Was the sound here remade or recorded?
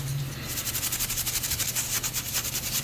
remade